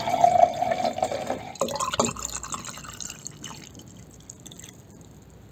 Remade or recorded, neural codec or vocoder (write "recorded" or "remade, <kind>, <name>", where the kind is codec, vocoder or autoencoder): recorded